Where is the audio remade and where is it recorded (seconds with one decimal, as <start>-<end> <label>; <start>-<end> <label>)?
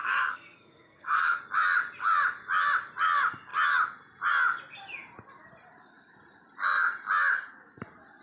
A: 0.0-1.4 remade; 1.4-8.2 recorded